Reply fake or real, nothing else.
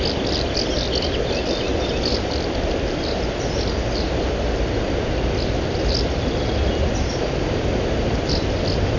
real